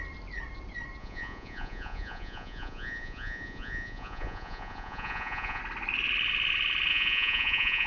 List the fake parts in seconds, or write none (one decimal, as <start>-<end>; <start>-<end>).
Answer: 1.0-5.6; 6.9-7.9